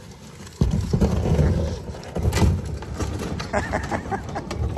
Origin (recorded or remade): recorded